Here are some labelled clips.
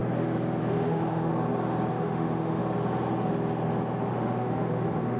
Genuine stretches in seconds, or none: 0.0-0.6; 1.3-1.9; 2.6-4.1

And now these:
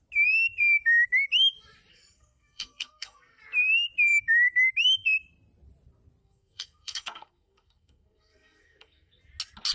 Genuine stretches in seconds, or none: 0.0-1.9; 3.4-6.2; 9.2-9.7

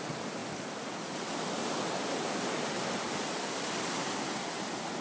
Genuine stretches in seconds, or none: 0.0-5.0